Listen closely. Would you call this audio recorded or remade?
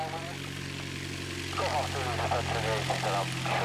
recorded